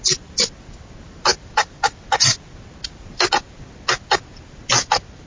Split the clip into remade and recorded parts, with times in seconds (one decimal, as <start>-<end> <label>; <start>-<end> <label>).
0.0-5.3 recorded